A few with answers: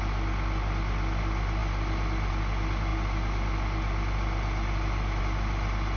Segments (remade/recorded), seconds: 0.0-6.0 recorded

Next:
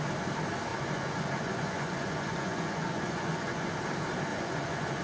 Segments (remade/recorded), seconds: 0.0-0.7 recorded; 0.7-3.7 remade; 3.7-4.3 recorded; 4.3-5.0 remade

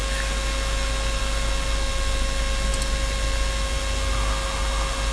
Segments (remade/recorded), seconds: 0.0-5.1 recorded

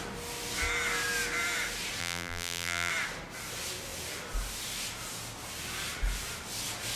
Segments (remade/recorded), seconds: 0.0-2.0 recorded; 2.0-2.9 remade; 2.9-7.0 recorded